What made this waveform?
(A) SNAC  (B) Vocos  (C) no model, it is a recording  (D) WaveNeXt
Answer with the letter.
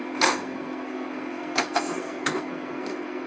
A